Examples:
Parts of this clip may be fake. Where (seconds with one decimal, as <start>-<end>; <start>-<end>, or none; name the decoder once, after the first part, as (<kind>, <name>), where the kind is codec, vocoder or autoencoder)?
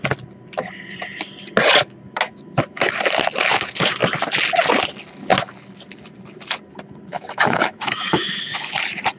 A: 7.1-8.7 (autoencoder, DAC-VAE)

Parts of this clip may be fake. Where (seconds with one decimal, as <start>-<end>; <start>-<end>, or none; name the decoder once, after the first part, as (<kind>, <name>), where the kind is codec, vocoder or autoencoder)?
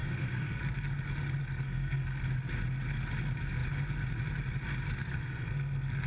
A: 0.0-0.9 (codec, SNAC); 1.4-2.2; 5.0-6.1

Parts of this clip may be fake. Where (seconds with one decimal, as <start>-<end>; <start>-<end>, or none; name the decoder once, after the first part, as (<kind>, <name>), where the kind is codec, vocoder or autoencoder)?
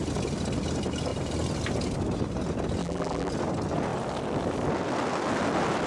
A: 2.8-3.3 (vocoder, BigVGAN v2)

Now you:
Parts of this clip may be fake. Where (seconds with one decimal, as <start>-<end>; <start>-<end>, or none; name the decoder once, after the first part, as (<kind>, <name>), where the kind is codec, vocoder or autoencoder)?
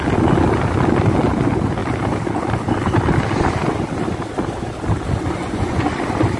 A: 5.4-5.9 (vocoder, Vocos)